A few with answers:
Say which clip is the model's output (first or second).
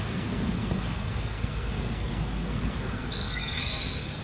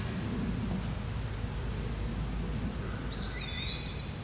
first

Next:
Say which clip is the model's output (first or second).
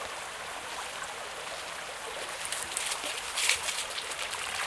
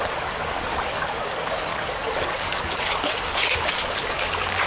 second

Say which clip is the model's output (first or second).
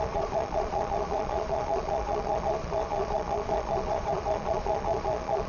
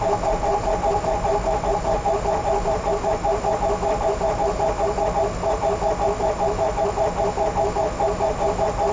first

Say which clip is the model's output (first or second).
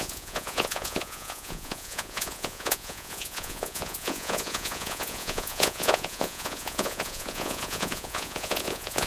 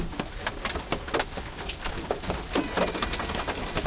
first